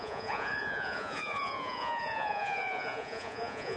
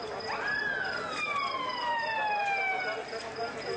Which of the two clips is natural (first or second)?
second